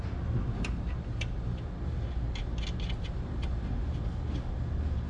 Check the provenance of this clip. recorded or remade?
recorded